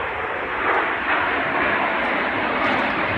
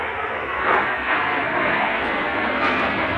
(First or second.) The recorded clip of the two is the first